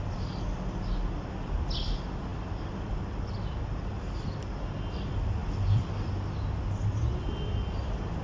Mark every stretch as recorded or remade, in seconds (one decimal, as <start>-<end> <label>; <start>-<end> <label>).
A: 0.0-2.3 recorded; 2.3-2.9 remade; 2.9-5.4 recorded; 5.4-6.1 remade; 6.1-8.2 recorded